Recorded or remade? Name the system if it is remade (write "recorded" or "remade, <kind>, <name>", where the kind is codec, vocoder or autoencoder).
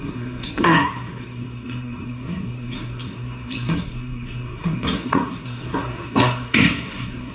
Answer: remade, codec, SNAC